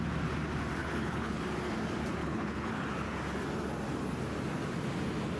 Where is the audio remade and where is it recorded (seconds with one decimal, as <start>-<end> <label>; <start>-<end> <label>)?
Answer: 0.0-0.8 recorded; 0.8-1.4 remade; 1.4-2.2 recorded; 2.2-2.7 remade; 2.7-5.4 recorded